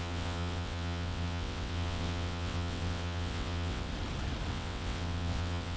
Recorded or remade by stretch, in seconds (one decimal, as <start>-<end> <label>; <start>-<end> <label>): 0.0-3.9 remade; 3.9-4.5 recorded; 4.5-5.8 remade